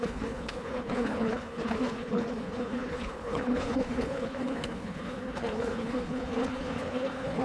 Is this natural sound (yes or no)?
no